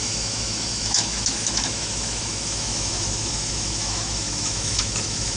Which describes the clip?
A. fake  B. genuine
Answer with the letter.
A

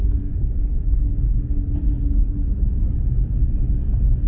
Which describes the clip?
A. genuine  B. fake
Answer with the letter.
A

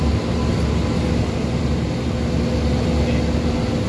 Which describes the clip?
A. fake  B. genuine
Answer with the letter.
B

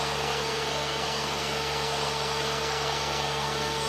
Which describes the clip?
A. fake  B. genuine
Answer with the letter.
A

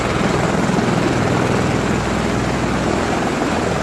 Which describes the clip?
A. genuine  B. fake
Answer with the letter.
A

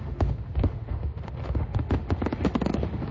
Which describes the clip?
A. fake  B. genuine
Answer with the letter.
A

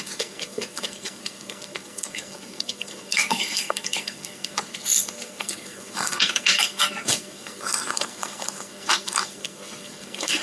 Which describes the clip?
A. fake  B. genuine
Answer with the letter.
A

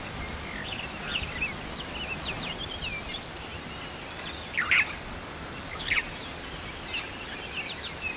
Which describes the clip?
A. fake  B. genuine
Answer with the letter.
B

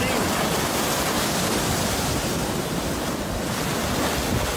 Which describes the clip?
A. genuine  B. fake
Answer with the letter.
A